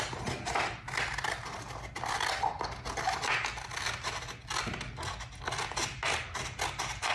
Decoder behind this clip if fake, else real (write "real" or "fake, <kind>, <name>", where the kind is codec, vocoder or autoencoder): real